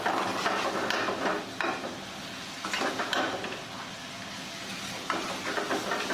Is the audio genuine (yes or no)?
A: yes